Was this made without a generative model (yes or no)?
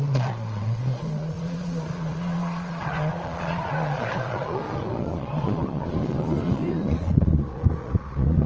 no